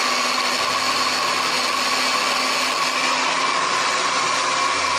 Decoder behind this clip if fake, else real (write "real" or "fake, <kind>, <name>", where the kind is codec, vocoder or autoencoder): real